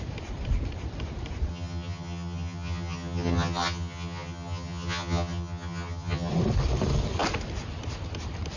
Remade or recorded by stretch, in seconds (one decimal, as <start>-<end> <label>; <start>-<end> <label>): 0.0-1.5 recorded; 1.5-6.3 remade; 6.3-8.6 recorded